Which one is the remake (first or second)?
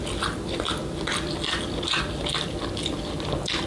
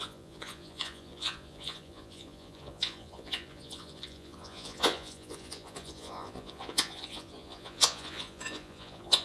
second